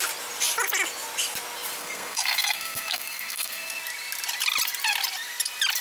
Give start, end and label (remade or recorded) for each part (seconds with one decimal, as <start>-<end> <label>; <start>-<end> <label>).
0.0-1.8 recorded; 1.8-3.8 remade; 3.8-5.8 recorded